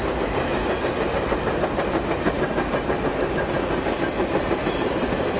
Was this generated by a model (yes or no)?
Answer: no